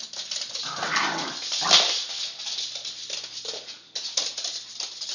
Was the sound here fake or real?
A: real